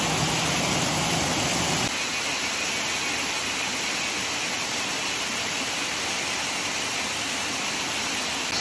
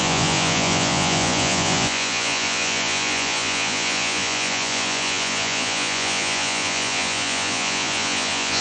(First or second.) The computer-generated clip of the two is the second